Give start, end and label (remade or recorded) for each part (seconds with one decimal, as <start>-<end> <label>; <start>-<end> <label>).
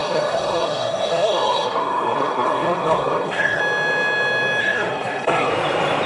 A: 0.0-3.6 remade; 3.6-4.6 recorded; 4.6-5.5 remade; 5.5-6.1 recorded